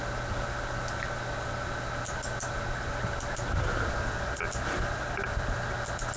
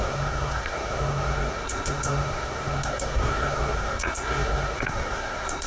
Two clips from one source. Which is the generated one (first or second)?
second